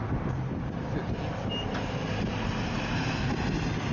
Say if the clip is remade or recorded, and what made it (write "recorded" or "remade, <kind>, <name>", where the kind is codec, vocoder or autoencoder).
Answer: recorded